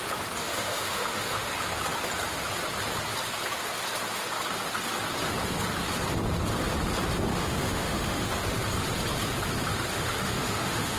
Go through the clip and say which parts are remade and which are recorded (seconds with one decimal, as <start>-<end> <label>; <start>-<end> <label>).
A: 0.0-0.4 recorded; 0.4-1.5 remade; 1.5-7.3 recorded; 7.3-8.3 remade; 8.3-9.9 recorded; 9.9-11.0 remade